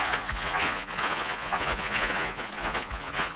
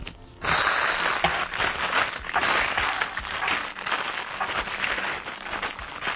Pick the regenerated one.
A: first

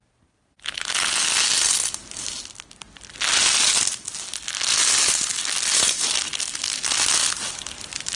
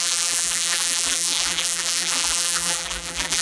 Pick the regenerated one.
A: second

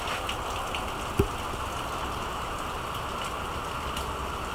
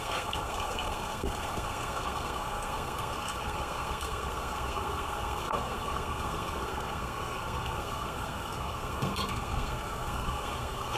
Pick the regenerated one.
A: second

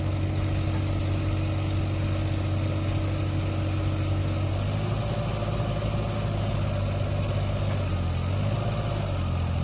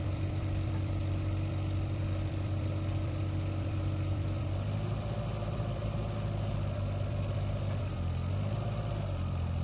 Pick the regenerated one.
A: second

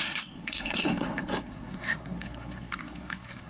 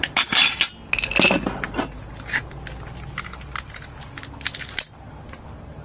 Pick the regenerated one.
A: first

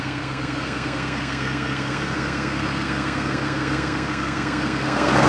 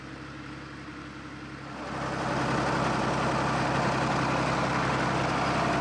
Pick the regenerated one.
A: first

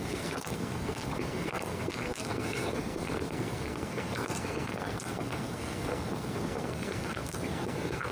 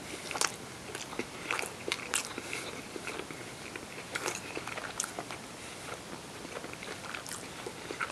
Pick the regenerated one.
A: first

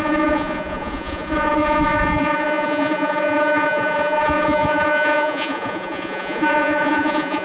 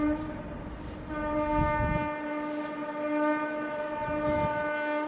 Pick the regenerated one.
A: first